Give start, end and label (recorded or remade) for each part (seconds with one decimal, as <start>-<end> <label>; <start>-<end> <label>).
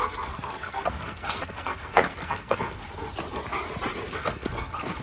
0.0-2.8 remade; 2.8-4.1 recorded; 4.1-5.0 remade